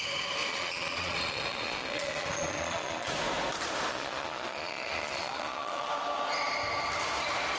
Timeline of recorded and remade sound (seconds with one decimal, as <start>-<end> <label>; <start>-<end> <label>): 0.0-0.5 recorded; 0.5-3.1 remade; 3.1-3.9 recorded; 3.9-5.9 remade; 5.9-7.6 recorded